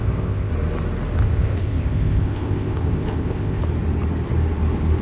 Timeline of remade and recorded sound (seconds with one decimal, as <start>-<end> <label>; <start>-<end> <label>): 0.0-0.5 remade; 0.5-1.2 recorded; 1.2-3.6 remade; 3.6-5.0 recorded